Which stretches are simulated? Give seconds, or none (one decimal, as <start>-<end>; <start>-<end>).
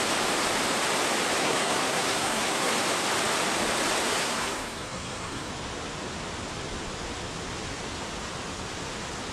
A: 1.4-2.7; 4.1-5.5